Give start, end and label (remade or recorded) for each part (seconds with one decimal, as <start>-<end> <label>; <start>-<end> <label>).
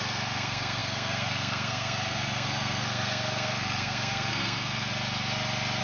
0.0-4.9 remade; 4.9-5.8 recorded